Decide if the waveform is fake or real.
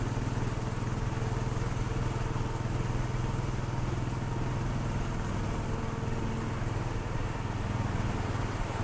real